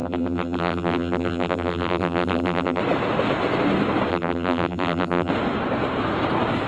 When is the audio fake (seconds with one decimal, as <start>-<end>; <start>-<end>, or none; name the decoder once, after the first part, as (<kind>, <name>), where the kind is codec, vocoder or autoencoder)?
0.0-2.8 (vocoder, BigVGAN v2); 4.1-5.3